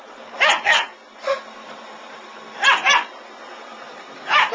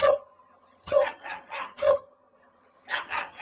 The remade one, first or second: second